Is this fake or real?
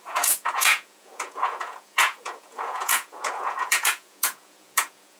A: fake